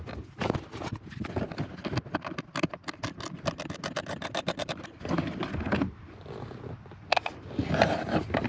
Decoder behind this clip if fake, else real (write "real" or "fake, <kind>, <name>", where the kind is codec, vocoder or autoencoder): real